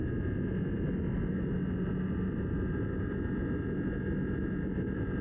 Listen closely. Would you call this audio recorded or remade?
recorded